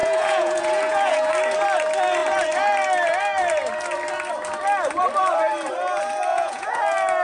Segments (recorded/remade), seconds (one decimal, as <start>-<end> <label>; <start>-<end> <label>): 0.0-1.3 remade; 1.3-6.3 recorded; 6.3-6.8 remade; 6.8-7.2 recorded